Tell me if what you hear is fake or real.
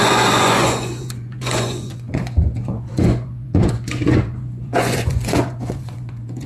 fake